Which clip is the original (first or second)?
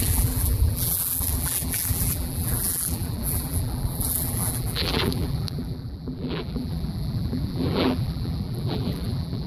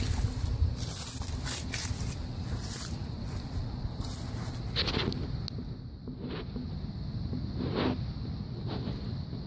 second